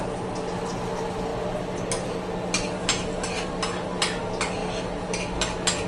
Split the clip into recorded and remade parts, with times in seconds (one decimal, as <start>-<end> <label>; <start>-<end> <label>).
0.0-5.9 recorded